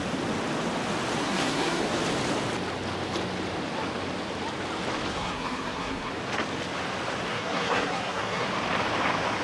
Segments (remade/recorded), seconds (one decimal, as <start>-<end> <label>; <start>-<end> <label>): 0.0-1.2 recorded; 1.2-1.8 remade; 1.8-5.1 recorded; 5.1-6.1 remade; 6.1-7.3 recorded; 7.3-8.5 remade; 8.5-9.4 recorded